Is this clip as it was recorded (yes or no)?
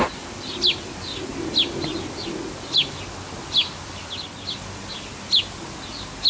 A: yes